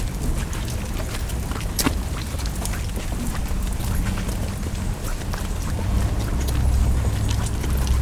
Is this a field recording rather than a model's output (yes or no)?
yes